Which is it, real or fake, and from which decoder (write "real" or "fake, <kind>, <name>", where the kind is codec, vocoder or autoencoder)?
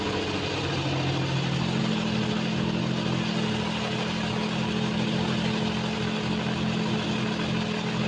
real